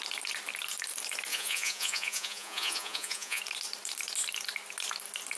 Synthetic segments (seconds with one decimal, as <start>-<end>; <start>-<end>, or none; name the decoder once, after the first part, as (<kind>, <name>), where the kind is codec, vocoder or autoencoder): 1.3-3.4 (vocoder, Vocos)